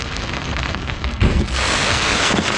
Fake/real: fake